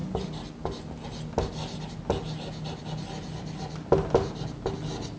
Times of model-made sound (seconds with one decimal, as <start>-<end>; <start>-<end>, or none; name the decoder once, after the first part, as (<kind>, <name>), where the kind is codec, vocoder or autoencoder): none